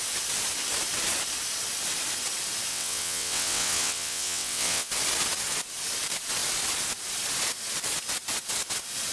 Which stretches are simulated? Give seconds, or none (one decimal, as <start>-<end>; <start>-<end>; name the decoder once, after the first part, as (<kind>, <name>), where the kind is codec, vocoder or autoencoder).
2.7-4.9 (vocoder, WaveNeXt)